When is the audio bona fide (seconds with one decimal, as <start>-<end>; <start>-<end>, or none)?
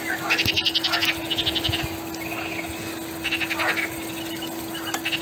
0.0-5.2